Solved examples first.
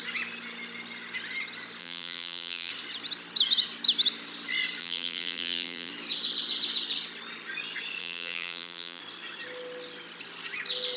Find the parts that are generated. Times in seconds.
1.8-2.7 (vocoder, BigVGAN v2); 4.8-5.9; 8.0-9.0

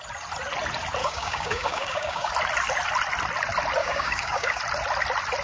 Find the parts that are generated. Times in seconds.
1.0-2.3 (codec, DAC); 3.8-4.6

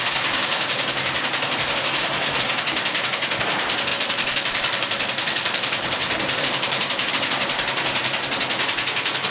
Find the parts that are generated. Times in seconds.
3.9-7.1 (vocoder, BigVGAN v2)

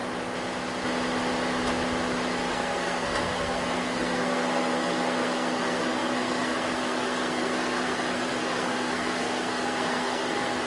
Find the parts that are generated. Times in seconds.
2.5-10.7 (codec, SNAC)

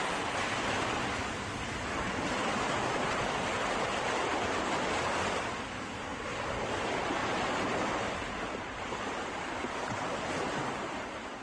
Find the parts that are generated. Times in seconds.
none